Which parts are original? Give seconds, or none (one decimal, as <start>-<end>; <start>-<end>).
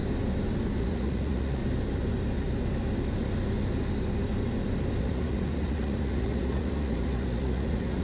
0.0-0.8; 1.6-5.0